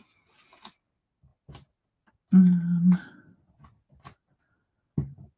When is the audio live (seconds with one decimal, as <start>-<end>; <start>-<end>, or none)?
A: 0.0-5.4